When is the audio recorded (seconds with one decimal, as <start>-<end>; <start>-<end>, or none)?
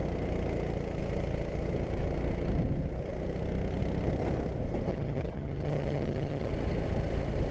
0.0-4.9; 6.5-7.5